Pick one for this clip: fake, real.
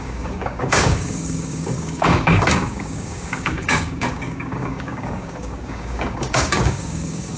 fake